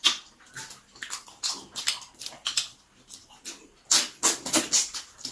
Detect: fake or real real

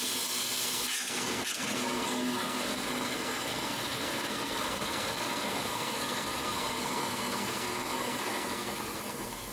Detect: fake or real fake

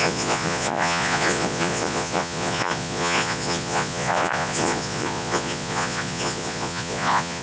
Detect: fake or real fake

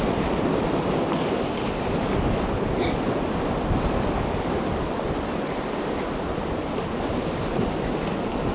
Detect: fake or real real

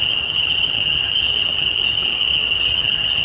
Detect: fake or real fake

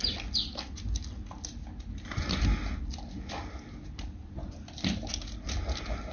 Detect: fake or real real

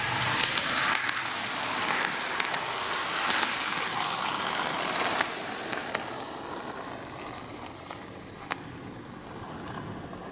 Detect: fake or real real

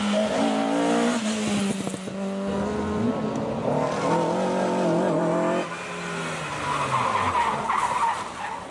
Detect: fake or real real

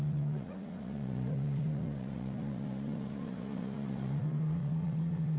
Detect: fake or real fake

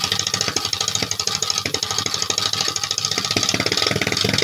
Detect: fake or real real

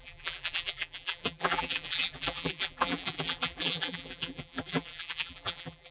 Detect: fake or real fake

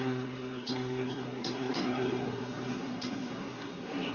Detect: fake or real fake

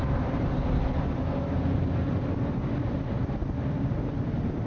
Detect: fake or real fake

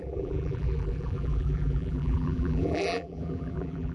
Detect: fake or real fake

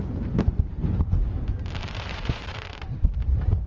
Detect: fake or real fake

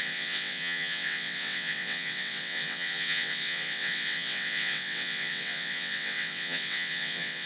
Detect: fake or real fake